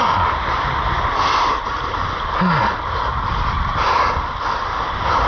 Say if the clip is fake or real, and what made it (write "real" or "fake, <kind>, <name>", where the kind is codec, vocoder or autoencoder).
real